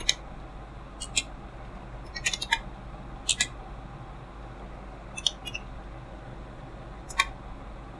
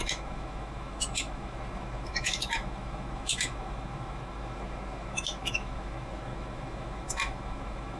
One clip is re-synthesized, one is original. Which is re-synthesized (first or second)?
second